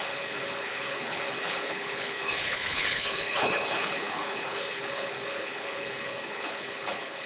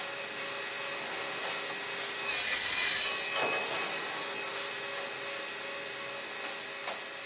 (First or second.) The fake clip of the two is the first